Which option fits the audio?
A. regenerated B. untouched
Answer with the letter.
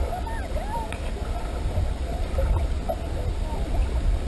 B